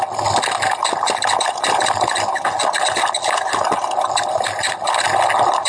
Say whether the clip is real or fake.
real